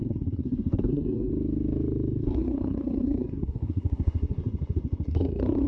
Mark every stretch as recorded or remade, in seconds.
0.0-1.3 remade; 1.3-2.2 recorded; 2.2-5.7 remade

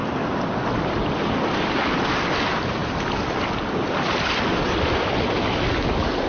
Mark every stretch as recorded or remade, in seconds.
0.0-6.3 recorded

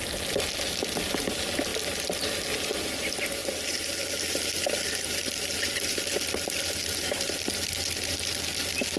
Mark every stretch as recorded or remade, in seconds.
0.0-3.4 recorded; 3.4-6.6 remade; 6.6-9.0 recorded

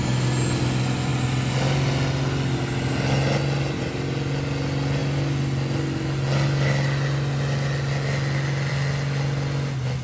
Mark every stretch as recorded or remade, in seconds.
0.0-10.0 recorded

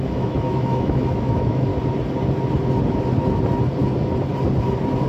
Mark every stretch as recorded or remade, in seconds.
0.0-1.7 remade; 1.7-5.1 recorded

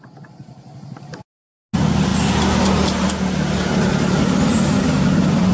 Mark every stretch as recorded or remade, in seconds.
0.0-5.5 recorded

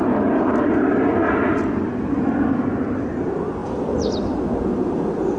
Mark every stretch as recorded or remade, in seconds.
0.0-5.4 recorded